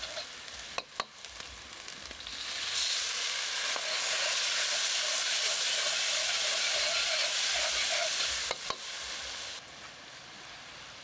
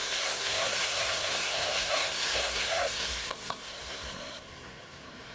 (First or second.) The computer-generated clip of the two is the second